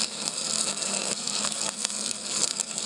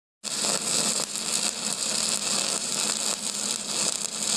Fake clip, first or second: first